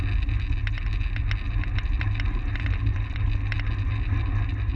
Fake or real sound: real